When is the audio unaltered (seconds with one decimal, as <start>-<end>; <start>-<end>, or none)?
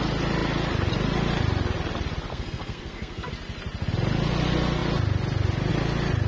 0.0-2.3; 3.3-6.3